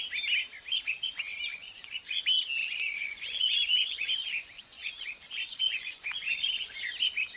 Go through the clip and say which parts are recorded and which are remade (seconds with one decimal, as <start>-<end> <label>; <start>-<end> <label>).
0.0-1.5 recorded; 1.5-2.2 remade; 2.2-2.6 recorded; 2.6-6.8 remade; 6.8-7.4 recorded